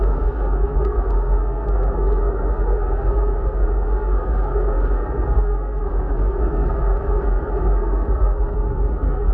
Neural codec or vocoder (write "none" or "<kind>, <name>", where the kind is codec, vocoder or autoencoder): codec, SNAC